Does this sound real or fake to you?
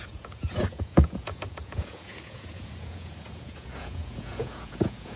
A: fake